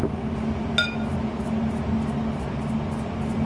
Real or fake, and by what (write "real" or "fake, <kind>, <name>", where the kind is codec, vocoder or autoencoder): real